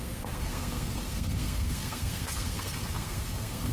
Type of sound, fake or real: fake